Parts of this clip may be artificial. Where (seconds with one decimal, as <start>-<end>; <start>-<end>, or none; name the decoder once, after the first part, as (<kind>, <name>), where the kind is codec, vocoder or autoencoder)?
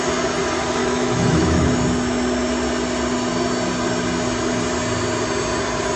0.8-1.7 (autoencoder, DAC-VAE)